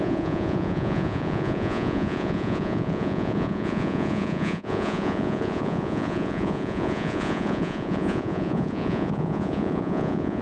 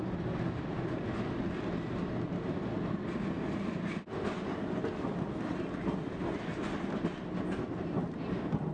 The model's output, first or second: first